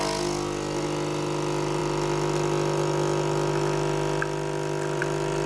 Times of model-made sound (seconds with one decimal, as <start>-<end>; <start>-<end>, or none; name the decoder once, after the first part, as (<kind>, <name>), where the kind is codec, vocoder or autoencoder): none